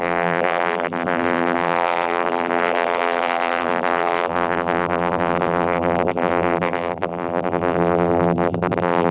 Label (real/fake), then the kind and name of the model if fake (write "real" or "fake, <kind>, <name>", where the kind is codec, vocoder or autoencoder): fake, vocoder, BigVGAN v2